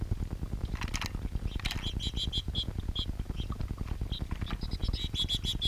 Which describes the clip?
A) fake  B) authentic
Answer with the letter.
B